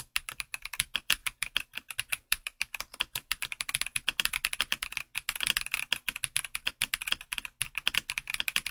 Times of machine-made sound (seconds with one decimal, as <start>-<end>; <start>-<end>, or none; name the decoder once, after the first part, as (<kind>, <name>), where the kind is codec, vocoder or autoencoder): 1.2-2.8 (vocoder, BigVGAN v2)